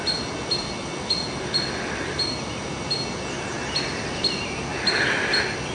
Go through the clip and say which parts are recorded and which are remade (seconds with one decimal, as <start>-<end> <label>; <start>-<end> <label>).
0.0-5.7 recorded